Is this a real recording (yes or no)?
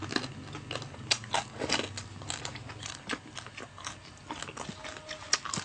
yes